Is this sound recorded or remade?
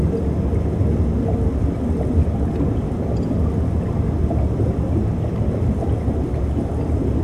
recorded